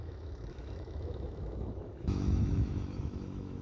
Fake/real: fake